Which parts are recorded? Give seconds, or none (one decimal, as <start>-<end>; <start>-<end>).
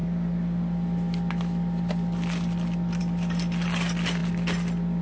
0.0-5.0